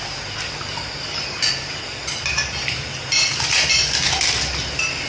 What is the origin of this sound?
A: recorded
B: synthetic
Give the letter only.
A